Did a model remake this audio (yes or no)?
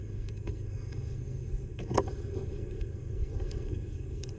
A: yes